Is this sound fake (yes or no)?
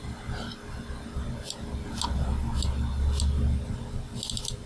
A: no